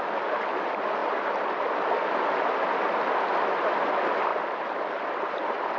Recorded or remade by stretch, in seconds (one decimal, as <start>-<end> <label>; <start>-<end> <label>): 0.0-5.8 recorded